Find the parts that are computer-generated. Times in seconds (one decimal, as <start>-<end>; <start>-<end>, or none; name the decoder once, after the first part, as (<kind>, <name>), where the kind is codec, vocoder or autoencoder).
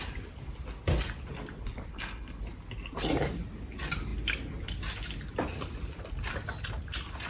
1.9-2.4 (codec, SNAC)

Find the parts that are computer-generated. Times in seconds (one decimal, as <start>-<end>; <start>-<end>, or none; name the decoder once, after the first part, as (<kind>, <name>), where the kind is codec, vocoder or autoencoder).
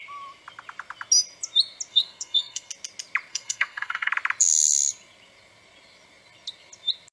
1.9-2.7 (codec, SNAC); 3.3-4.1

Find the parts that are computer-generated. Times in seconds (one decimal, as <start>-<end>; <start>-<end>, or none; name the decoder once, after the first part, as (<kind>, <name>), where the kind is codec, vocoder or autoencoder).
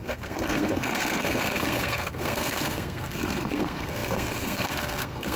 0.0-5.4 (codec, SNAC)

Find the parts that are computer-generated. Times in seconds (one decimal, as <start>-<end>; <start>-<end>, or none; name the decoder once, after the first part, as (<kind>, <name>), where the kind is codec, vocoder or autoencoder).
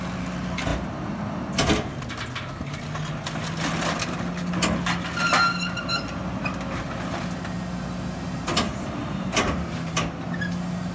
none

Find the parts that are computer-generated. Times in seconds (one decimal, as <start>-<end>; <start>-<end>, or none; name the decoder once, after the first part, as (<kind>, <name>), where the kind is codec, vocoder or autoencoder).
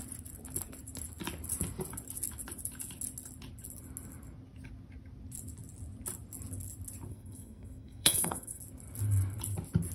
7.1-8.6 (codec, SNAC)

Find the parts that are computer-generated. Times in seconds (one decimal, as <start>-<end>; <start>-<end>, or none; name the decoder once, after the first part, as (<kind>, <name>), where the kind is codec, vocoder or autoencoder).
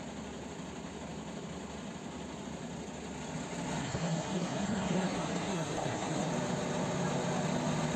3.8-6.3 (codec, SNAC)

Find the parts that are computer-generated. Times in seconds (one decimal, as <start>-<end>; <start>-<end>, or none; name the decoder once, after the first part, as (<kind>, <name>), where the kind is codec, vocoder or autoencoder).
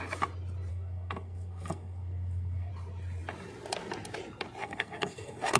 0.7-2.7 (codec, SNAC); 4.6-5.6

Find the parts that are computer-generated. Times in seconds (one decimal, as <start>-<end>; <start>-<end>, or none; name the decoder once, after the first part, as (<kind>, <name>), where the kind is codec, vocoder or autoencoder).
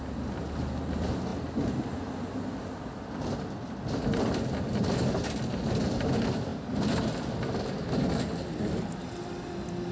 none